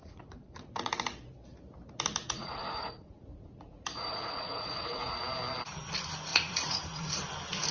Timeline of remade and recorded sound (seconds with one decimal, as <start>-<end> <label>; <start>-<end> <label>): 0.0-0.9 remade; 0.9-2.2 recorded; 2.2-5.2 remade; 5.2-6.3 recorded; 6.3-7.1 remade; 7.1-7.7 recorded